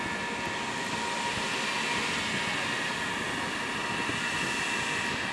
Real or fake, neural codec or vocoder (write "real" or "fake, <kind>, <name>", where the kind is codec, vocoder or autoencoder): real